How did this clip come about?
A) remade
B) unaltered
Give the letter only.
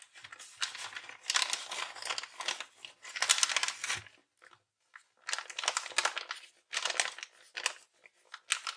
B